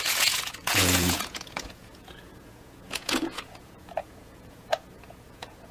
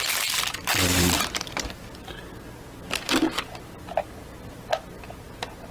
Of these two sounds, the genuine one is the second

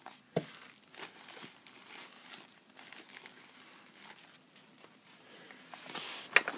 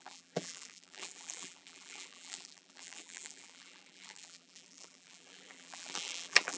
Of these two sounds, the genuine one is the first